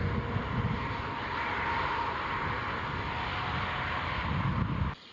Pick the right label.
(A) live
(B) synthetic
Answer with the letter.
A